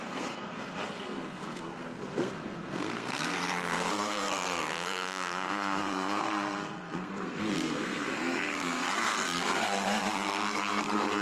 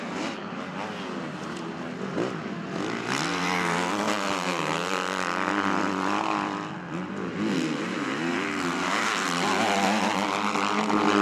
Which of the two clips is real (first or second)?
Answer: second